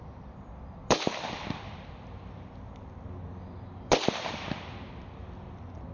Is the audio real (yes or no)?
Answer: no